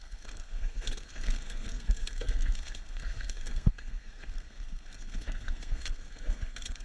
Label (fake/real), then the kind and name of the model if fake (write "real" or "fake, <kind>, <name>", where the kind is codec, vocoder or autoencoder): fake, codec, SNAC